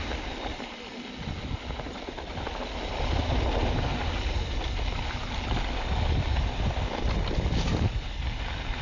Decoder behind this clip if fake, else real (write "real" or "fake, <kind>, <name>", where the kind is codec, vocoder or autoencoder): real